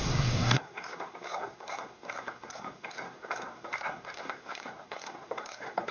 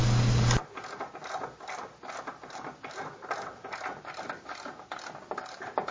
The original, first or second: second